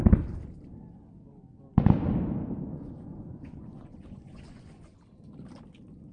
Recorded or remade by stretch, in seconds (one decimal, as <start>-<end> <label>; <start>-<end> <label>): 0.0-2.7 recorded; 2.7-5.0 remade; 5.0-6.1 recorded